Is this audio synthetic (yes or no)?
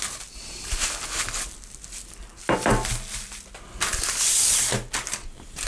no